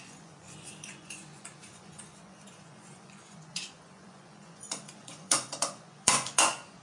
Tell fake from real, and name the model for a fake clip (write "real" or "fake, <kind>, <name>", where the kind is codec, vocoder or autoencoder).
fake, vocoder, Vocos